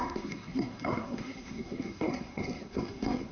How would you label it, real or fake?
fake